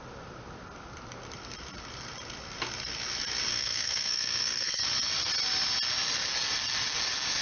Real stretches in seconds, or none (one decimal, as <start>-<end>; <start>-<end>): 0.0-3.5; 4.8-7.4